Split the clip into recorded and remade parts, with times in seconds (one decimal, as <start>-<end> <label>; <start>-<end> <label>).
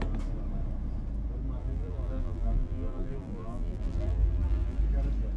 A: 0.0-1.6 recorded; 1.6-4.8 remade; 4.8-5.4 recorded